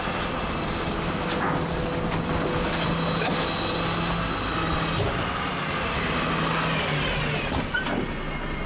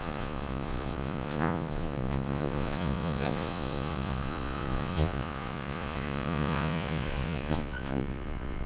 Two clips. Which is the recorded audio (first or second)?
first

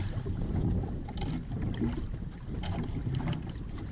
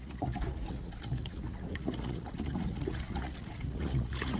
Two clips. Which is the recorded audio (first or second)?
first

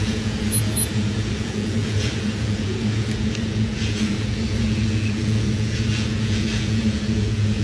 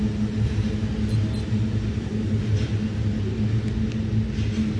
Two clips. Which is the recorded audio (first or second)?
second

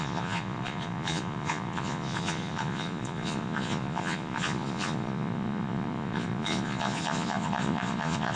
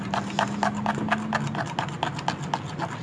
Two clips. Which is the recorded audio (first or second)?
second